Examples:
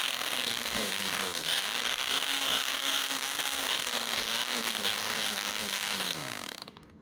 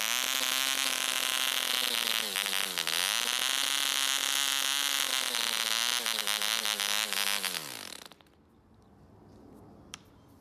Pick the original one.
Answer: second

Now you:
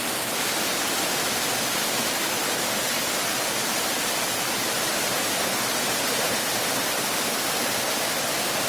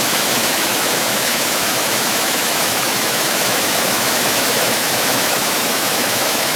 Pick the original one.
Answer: first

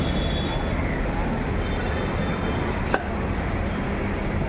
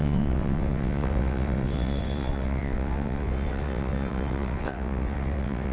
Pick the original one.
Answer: first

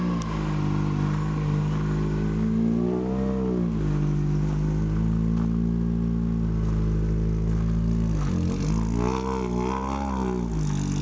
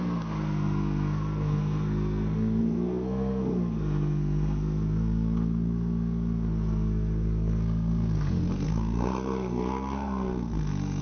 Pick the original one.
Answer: first